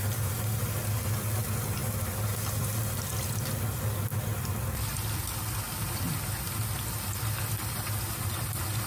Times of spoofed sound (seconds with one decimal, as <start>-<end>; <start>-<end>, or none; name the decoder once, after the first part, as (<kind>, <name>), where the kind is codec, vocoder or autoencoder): none